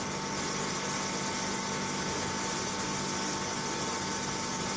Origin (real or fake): real